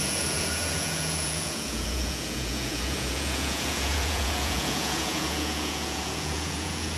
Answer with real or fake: fake